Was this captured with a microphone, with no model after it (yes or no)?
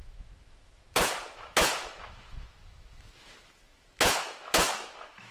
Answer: no